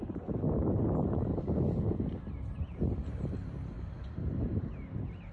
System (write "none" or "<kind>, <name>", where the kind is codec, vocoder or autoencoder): vocoder, BigVGAN v2